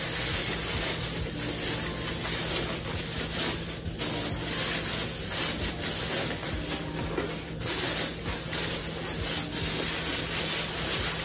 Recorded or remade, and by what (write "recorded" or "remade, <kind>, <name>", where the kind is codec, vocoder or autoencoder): recorded